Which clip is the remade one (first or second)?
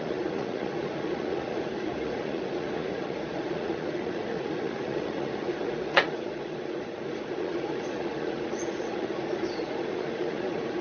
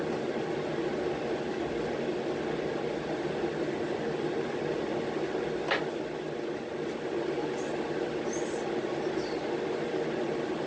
first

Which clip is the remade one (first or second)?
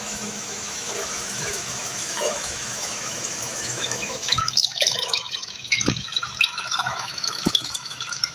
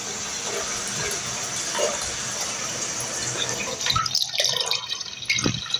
first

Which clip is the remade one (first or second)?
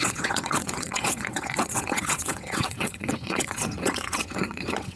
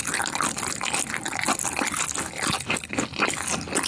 first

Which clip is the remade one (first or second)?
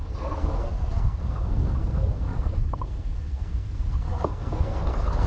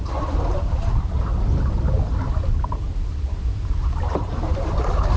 first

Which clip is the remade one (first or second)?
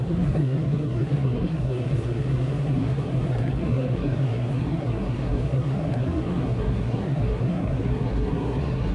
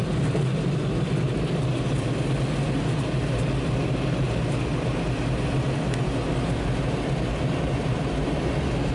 first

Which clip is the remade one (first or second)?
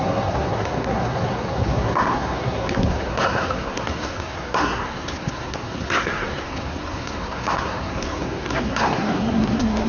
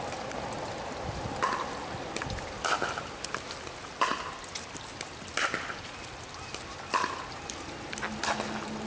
first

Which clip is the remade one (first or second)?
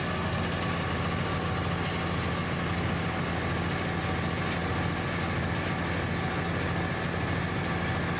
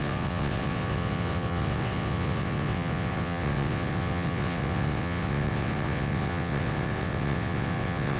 second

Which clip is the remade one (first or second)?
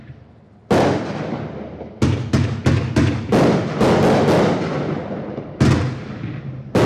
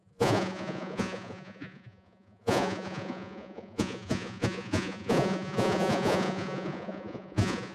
second